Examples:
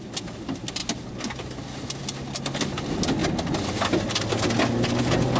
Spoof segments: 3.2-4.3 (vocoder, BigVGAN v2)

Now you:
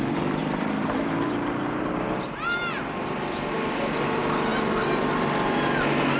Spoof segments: 0.4-1.9 (vocoder, BigVGAN v2)

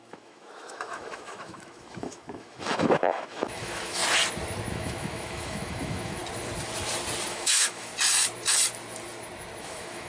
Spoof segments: 0.0-4.0 (autoencoder, DAC-VAE); 4.7-6.2; 7.3-7.9; 9.6-10.1

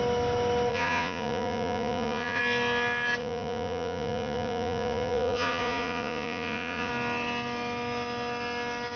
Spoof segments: 0.7-2.4 (vocoder, Vocos); 3.2-6.9

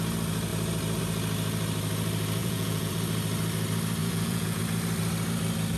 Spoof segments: 2.4-2.9 (vocoder, Vocos); 4.0-4.6

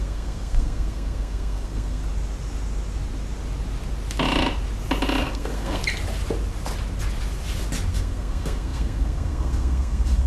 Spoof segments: 0.0-2.0 (codec, SNAC); 5.2-5.8; 7.9-10.3

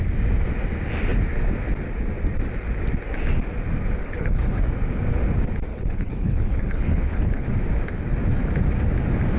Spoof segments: 4.0-4.6 (codec, HILCodec); 5.7-7.5

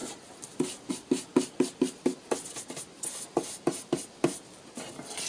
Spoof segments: none